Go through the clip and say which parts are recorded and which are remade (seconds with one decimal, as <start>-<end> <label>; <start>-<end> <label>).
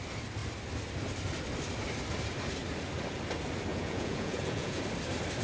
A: 0.0-3.7 recorded; 3.7-4.8 remade; 4.8-5.4 recorded